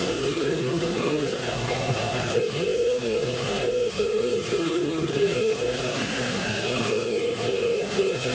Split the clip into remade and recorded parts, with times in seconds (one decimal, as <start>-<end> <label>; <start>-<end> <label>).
0.0-8.3 remade